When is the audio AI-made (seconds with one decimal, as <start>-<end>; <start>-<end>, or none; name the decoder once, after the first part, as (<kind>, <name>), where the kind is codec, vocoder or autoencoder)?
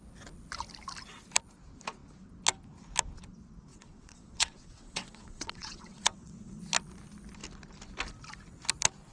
3.7-6.6 (vocoder, WaveNeXt)